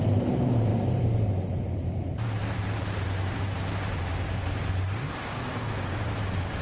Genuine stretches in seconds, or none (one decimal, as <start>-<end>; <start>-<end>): 0.0-0.7; 4.7-6.6